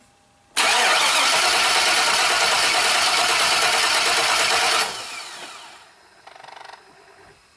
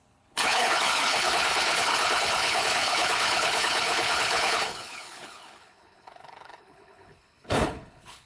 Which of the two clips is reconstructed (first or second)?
second